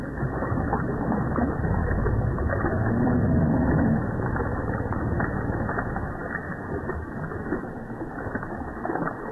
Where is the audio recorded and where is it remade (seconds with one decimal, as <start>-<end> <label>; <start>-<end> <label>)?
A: 0.0-1.8 remade; 1.8-2.7 recorded; 2.7-9.3 remade